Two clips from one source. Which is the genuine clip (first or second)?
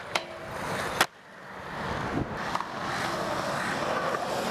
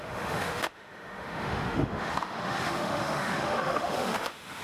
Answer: first